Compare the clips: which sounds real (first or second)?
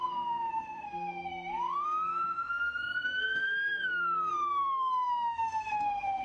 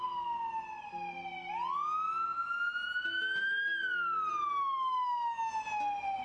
second